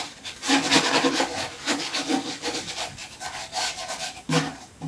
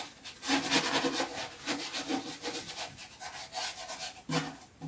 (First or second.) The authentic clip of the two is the second